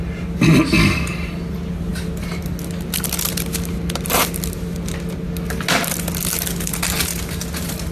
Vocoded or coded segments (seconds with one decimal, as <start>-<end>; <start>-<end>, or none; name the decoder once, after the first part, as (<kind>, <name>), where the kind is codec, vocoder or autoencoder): none